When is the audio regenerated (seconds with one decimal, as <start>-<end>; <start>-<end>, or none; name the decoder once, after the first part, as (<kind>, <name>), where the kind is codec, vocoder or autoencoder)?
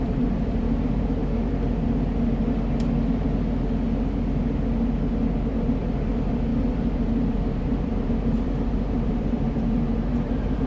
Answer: 0.0-1.2 (vocoder, BigVGAN v2); 5.5-10.7